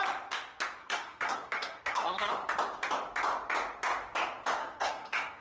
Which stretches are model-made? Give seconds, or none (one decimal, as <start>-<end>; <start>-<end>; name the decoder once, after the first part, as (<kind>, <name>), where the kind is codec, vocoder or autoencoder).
0.8-2.3 (codec, SNAC); 4.6-5.4